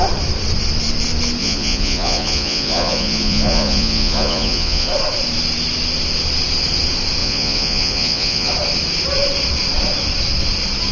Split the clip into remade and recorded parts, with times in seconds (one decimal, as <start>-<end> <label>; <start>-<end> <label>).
0.0-1.4 recorded; 1.4-4.9 remade; 4.9-7.2 recorded; 7.2-8.5 remade; 8.5-10.9 recorded